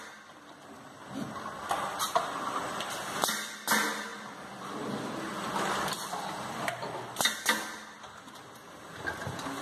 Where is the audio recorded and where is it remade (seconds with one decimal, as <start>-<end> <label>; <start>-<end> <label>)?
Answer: 0.0-9.6 recorded